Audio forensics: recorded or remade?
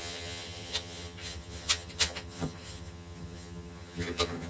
remade